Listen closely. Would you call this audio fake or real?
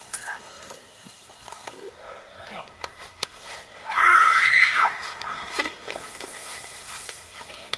fake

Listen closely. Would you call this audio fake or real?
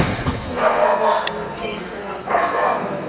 fake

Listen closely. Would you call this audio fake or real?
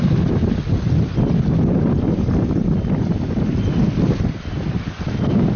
real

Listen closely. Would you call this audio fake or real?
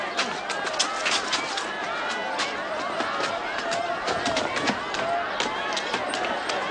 real